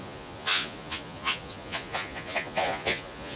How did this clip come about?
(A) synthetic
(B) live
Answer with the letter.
A